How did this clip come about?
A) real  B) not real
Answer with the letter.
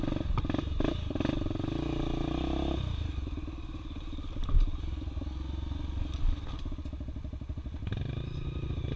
A